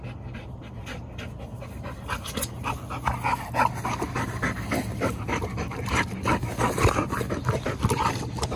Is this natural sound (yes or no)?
yes